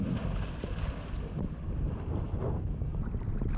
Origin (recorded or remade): recorded